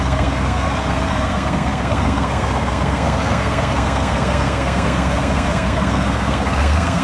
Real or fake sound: fake